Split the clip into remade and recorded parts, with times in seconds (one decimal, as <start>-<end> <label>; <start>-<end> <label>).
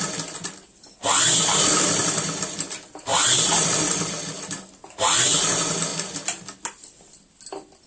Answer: 0.0-7.9 recorded